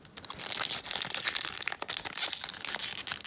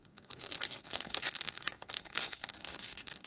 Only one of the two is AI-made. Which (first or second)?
second